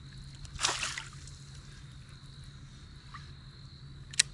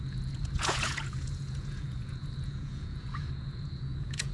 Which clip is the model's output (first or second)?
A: second